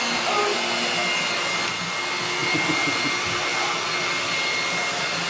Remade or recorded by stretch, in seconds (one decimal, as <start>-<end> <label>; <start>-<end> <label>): 0.0-5.3 recorded

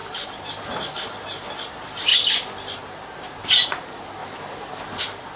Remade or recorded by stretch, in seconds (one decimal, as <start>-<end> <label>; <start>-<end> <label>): 0.0-5.4 recorded

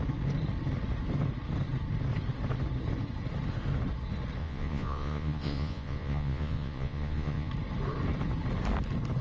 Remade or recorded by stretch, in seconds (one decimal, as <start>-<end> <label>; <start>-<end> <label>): 0.0-4.4 recorded; 4.4-7.5 remade; 7.5-9.2 recorded